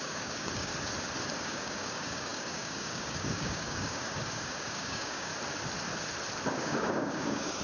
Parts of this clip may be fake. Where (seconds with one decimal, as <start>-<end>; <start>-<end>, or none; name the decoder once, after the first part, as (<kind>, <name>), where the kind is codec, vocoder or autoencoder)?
0.0-0.7 (codec, DAC); 1.4-5.3; 6.5-7.6